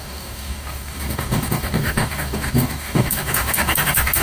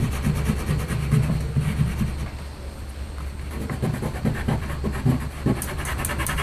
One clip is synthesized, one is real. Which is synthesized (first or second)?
first